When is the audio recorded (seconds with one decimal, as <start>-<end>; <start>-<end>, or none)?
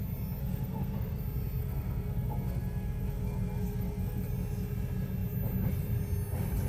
0.0-0.4; 1.2-1.6; 4.2-6.7